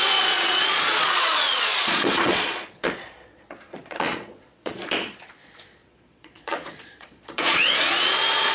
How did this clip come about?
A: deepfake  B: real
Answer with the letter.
A